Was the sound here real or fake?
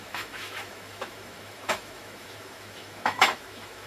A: fake